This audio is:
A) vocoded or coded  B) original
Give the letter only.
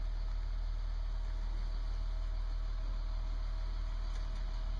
B